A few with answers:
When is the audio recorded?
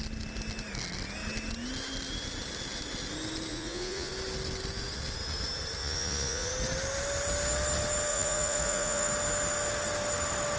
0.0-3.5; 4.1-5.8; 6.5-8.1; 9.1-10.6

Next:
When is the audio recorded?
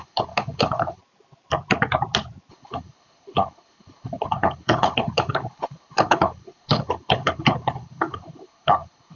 1.0-2.5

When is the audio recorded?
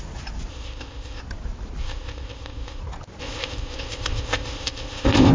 0.0-0.5; 1.2-1.8; 2.8-3.2